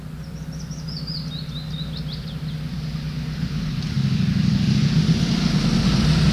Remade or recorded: recorded